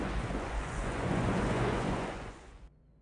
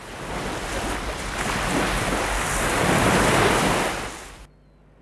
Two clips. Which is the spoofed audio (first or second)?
first